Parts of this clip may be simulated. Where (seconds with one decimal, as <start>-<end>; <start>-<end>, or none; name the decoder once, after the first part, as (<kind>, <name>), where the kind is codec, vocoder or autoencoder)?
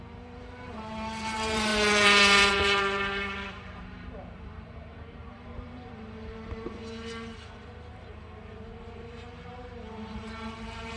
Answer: 0.0-6.8 (vocoder, BigVGAN v2); 7.9-11.0